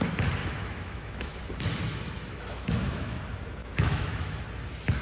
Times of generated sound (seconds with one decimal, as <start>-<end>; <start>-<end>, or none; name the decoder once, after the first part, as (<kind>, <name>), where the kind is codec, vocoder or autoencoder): 0.4-1.4 (autoencoder, DAC-VAE); 1.9-3.2; 3.6-4.4